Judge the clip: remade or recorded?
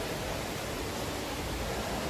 recorded